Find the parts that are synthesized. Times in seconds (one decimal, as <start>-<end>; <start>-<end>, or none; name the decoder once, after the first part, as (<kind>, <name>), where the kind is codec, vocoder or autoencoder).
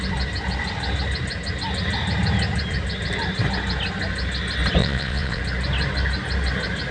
4.8-5.4 (vocoder, Vocos)